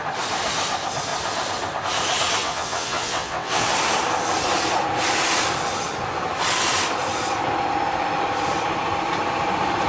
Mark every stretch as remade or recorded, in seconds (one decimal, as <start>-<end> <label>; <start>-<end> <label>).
0.0-2.4 recorded; 2.4-3.7 remade; 3.7-9.9 recorded